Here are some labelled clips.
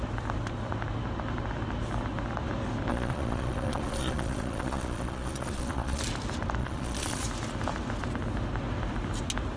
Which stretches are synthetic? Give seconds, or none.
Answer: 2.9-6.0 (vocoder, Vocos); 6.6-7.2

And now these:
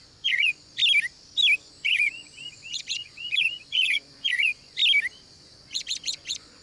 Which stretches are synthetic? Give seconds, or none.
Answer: 0.0-0.8 (vocoder, Vocos); 1.6-4.8; 5.3-6.6